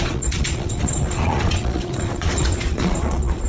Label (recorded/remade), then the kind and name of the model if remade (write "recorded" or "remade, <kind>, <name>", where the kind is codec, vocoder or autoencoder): remade, vocoder, Vocos